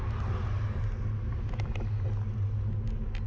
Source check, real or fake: real